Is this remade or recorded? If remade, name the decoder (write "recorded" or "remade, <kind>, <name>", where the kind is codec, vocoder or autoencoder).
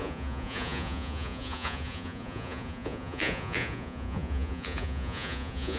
remade, vocoder, Vocos